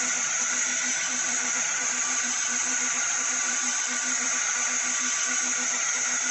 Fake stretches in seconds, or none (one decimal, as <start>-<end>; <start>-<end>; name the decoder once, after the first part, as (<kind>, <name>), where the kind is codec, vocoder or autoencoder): 1.1-4.3 (vocoder, BigVGAN v2)